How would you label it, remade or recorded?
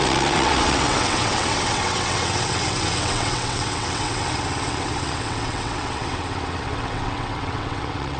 remade